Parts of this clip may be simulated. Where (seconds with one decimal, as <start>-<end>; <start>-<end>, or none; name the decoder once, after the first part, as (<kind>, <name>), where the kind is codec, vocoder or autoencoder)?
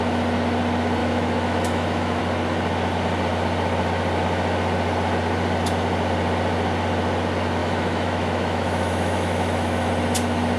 1.0-2.2 (autoencoder, DAC-VAE); 7.6-9.9